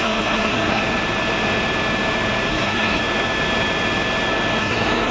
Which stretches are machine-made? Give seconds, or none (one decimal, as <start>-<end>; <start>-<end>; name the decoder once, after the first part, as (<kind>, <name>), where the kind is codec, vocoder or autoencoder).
0.0-0.8 (codec, SNAC); 2.5-3.0; 4.6-5.1